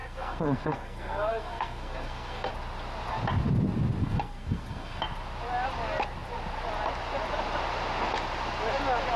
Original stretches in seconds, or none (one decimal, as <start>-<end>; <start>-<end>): 2.5-4.0; 5.0-9.2